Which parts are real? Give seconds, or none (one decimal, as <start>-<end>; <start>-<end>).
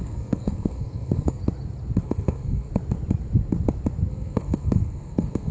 1.4-2.0; 2.7-4.1